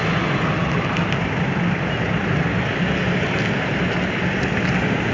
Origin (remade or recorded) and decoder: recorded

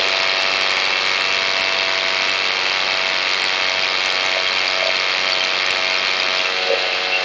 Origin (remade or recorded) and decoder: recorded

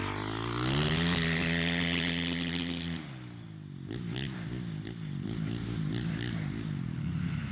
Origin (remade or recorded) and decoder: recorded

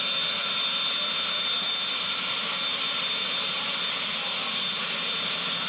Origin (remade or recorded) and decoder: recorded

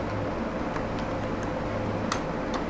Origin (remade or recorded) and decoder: recorded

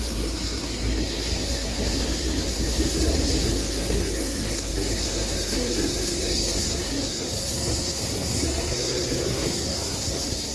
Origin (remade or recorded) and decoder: remade, codec, SNAC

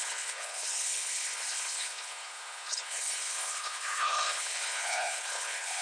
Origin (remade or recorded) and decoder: remade, codec, HILCodec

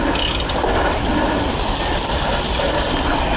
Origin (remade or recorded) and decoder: recorded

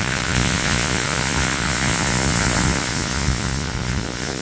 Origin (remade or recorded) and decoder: remade, vocoder, Vocos